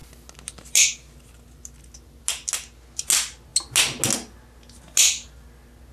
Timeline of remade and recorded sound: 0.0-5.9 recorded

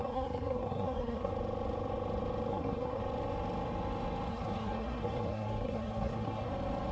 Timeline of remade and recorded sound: 0.0-1.3 remade; 1.3-2.5 recorded; 2.5-3.0 remade; 3.0-4.3 recorded; 4.3-6.5 remade; 6.5-6.9 recorded